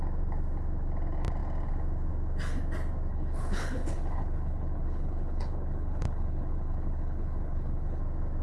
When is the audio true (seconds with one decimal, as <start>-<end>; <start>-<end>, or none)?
0.0-3.1; 8.0-8.4